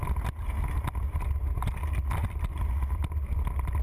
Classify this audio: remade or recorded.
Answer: recorded